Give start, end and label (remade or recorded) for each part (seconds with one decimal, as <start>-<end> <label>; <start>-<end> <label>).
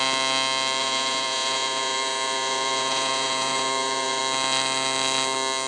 0.0-0.8 recorded; 0.8-4.2 remade; 4.2-5.7 recorded